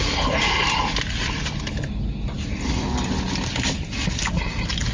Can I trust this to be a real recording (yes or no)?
yes